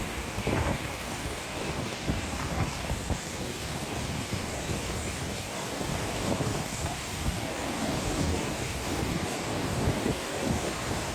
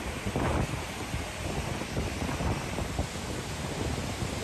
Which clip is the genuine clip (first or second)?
second